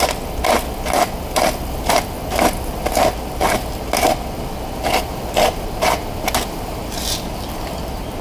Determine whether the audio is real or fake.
real